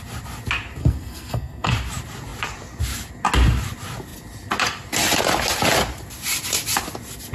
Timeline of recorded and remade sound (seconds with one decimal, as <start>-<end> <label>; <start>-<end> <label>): 0.0-0.8 recorded; 0.8-1.7 remade; 1.7-7.3 recorded